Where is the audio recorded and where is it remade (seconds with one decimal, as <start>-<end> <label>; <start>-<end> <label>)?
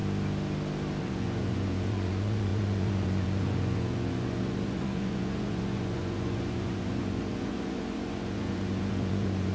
0.0-1.0 recorded; 1.0-9.5 remade